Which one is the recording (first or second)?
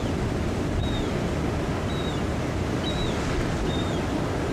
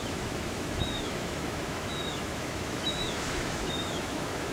first